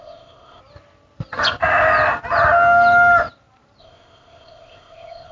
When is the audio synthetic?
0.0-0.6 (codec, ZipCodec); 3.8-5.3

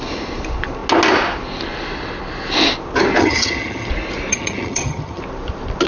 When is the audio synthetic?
3.2-3.9 (vocoder, HiFi-GAN); 4.3-5.2